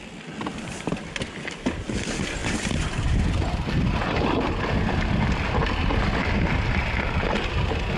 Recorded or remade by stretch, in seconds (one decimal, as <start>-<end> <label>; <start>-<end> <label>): 0.0-8.0 recorded